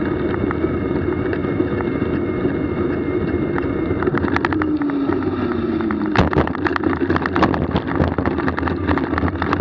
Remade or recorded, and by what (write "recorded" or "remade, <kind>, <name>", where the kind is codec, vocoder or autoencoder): recorded